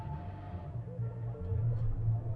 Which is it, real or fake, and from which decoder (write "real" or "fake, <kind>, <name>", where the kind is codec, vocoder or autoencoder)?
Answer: real